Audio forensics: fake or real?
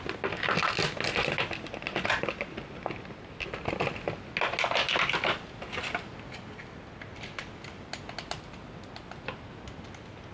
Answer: real